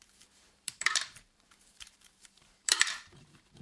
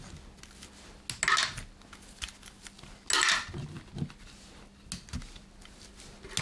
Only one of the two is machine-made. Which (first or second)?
first